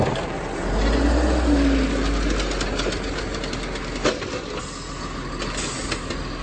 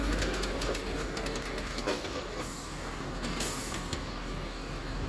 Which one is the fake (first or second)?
second